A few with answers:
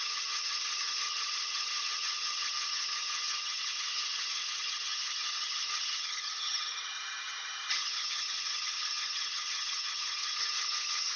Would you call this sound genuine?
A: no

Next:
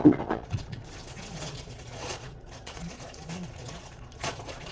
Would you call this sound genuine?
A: no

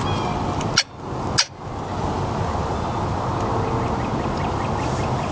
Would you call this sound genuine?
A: yes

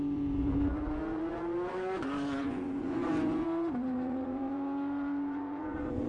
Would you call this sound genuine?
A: no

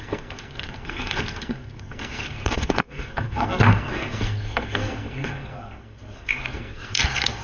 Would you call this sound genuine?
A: no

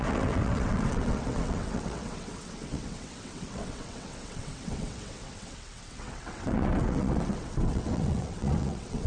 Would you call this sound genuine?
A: no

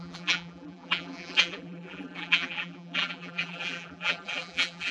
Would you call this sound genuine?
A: no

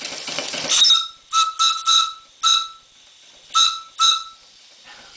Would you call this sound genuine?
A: yes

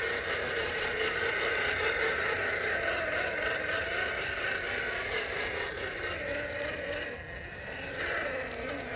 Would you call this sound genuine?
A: yes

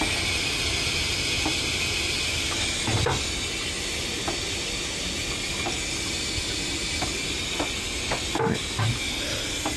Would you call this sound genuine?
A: yes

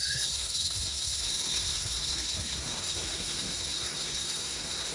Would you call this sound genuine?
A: no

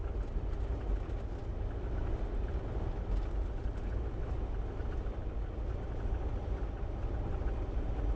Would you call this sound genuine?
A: yes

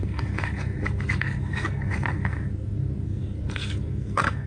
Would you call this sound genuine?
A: no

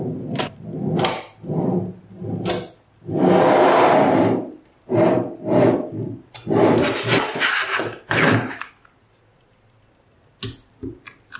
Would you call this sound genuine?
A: yes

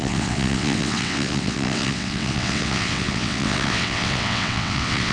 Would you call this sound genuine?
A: no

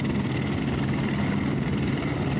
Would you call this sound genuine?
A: yes